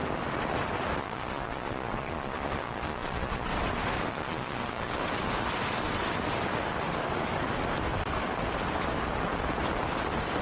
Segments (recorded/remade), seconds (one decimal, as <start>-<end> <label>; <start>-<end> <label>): 0.0-1.0 recorded; 1.0-3.5 remade; 3.5-4.1 recorded; 4.1-5.0 remade; 5.0-10.4 recorded